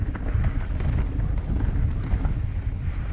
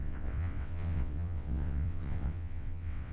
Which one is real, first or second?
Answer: first